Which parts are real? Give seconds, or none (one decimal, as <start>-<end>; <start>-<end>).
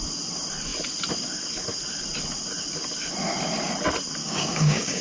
0.0-4.2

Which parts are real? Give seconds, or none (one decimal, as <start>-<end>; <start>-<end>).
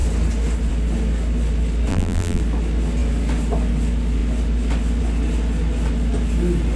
0.0-1.9; 2.4-6.8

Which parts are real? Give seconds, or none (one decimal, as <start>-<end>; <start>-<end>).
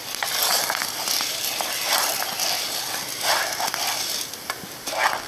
0.0-5.3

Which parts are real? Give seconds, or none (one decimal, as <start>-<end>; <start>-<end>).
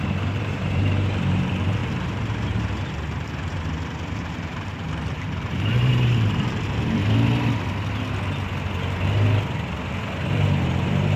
7.0-10.3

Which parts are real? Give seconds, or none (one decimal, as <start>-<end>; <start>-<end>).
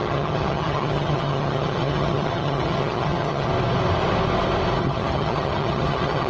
3.5-4.8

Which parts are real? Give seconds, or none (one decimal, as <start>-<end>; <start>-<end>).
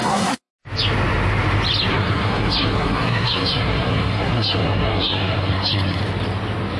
0.5-1.9; 6.0-6.8